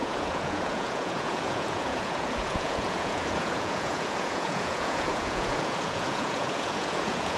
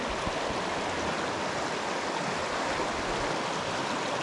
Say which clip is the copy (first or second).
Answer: first